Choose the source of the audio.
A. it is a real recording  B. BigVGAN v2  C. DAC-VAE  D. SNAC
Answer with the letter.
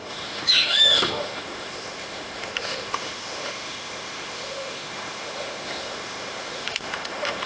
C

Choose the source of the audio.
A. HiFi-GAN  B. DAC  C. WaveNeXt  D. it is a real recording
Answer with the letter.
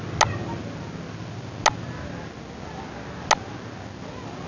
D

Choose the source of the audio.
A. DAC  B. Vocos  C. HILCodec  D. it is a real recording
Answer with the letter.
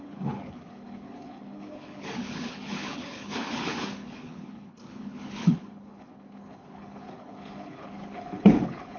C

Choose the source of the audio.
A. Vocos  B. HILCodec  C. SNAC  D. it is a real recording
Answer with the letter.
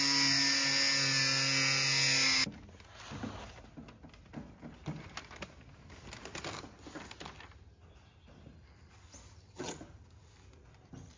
D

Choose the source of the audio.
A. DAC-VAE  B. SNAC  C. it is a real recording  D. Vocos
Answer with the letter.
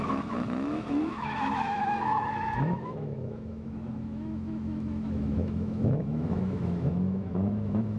A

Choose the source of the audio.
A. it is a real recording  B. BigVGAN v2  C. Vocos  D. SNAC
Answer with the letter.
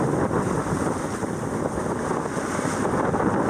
A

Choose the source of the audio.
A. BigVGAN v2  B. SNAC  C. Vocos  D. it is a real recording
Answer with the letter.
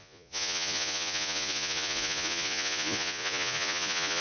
C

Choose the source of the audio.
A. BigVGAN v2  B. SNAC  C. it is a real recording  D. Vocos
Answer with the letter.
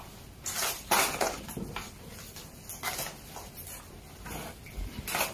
C